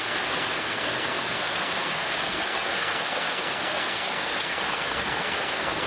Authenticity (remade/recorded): remade